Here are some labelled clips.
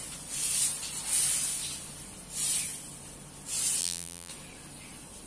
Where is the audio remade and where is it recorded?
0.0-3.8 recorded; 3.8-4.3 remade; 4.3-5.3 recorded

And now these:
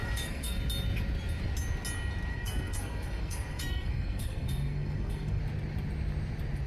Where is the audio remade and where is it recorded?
0.0-0.6 remade; 0.6-2.3 recorded; 2.3-5.4 remade; 5.4-6.7 recorded

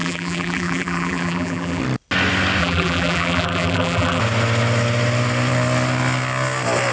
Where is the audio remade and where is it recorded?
0.0-1.8 remade; 1.8-2.6 recorded; 2.6-4.2 remade; 4.2-6.9 recorded

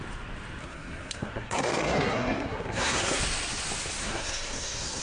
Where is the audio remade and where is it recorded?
0.0-0.6 recorded; 0.6-3.2 remade; 3.2-4.0 recorded; 4.0-5.0 remade

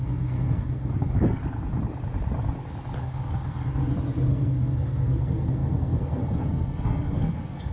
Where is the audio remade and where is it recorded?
0.0-1.4 remade; 1.4-3.0 recorded; 3.0-3.8 remade; 3.8-4.3 recorded; 4.3-7.7 remade